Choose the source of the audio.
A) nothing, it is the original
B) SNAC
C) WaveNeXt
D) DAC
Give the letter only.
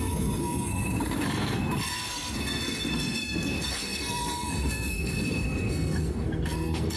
B